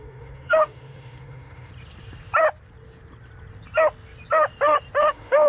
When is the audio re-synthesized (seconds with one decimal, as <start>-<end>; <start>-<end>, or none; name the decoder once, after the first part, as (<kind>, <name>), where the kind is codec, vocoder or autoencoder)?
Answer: 0.0-1.7 (autoencoder, DAC-VAE); 5.0-5.5